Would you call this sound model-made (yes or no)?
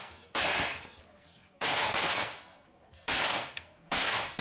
yes